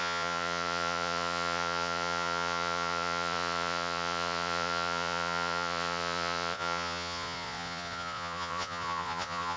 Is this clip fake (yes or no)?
yes